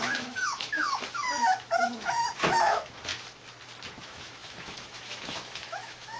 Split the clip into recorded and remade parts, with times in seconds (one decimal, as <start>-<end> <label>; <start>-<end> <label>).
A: 0.0-3.1 remade; 3.1-4.0 recorded; 4.0-6.2 remade